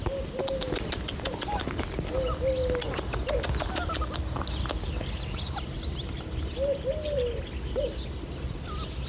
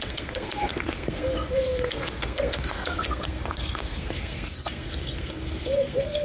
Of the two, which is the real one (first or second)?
first